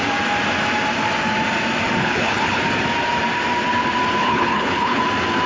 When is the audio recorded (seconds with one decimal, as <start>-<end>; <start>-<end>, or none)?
0.0-2.0; 2.6-4.2; 5.0-5.5